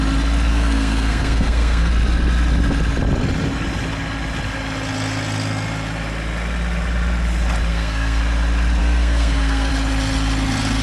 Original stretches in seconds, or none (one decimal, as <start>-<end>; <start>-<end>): 0.0-0.5; 1.9-7.7; 8.2-8.8; 9.7-10.8